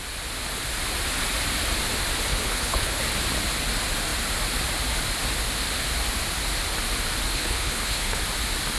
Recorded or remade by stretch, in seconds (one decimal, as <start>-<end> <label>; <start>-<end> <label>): 0.0-2.3 recorded; 2.3-3.0 remade; 3.0-7.3 recorded; 7.3-8.2 remade; 8.2-8.8 recorded